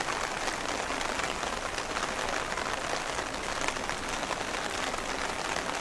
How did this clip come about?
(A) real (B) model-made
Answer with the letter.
A